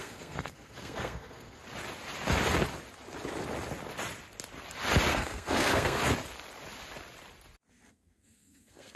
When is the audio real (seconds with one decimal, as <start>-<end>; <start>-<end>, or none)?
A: 1.6-5.1; 6.0-7.7